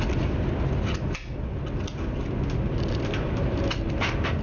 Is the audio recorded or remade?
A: recorded